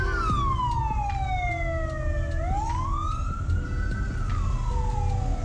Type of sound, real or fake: real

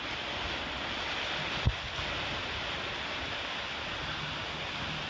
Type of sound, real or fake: real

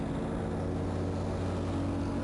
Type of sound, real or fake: real